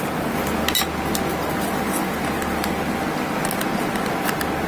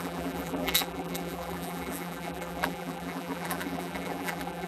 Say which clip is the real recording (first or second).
first